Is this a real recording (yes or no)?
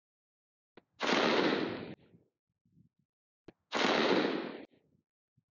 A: yes